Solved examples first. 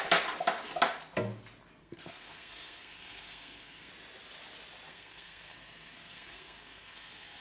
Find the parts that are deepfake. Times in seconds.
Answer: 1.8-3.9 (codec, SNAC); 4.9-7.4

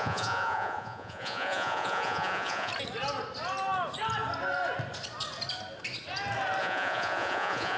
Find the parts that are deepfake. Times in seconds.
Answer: 0.0-2.7 (vocoder, Vocos); 6.6-7.8

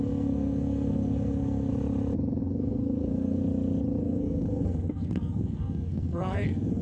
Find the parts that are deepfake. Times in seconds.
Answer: 0.0-1.7 (codec, SNAC); 2.4-3.4; 4.0-6.8

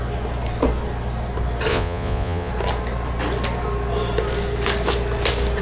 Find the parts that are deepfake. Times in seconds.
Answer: 1.7-2.5 (vocoder, Vocos)

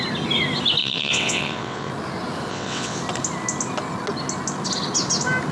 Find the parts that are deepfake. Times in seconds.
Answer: 0.8-1.9 (vocoder, WaveNeXt); 2.5-3.0

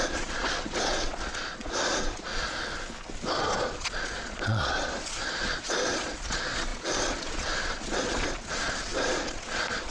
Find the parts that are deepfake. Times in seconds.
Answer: 0.0-2.3 (vocoder, Vocos); 3.4-9.9